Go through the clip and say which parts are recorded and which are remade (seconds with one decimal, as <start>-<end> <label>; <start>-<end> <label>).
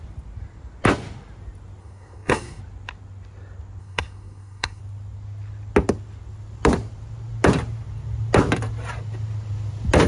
0.0-1.8 recorded; 1.8-2.6 remade; 2.6-3.8 recorded; 3.8-4.8 remade; 4.8-10.1 recorded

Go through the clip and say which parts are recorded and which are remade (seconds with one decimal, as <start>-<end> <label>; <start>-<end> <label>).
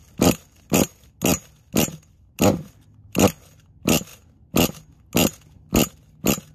0.0-0.9 remade; 0.9-6.5 recorded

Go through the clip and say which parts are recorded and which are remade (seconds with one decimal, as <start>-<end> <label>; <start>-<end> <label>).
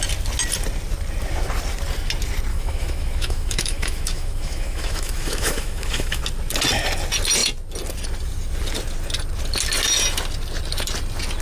0.0-2.5 recorded; 2.5-6.2 remade; 6.2-11.4 recorded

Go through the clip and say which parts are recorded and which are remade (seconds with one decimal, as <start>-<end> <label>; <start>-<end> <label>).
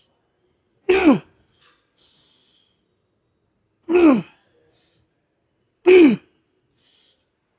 0.0-7.6 recorded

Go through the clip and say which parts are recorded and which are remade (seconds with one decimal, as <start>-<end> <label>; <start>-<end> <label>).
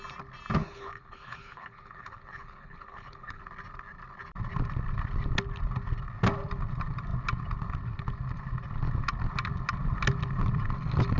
0.0-0.6 recorded; 0.6-3.4 remade; 3.4-11.2 recorded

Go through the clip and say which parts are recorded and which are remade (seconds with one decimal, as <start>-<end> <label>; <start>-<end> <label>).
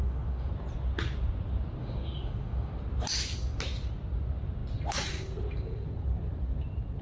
0.0-0.5 remade; 0.5-1.8 recorded; 1.8-2.7 remade; 2.7-7.0 recorded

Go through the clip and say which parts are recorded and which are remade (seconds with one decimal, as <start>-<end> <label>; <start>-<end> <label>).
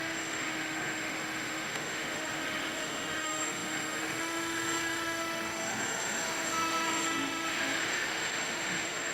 0.0-9.1 remade